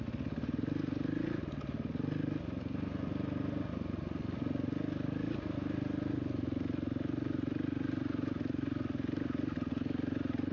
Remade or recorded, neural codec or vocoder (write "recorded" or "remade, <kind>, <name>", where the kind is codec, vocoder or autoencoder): recorded